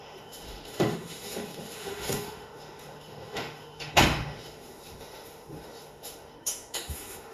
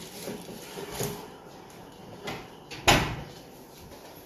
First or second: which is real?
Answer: second